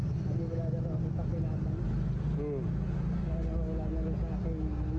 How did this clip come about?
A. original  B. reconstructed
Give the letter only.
A